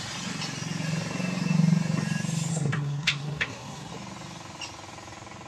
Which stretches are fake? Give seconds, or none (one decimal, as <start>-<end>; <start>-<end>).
2.5-3.9